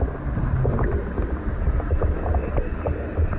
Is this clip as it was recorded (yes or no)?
yes